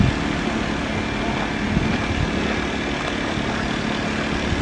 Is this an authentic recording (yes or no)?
yes